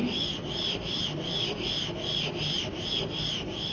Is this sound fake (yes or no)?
no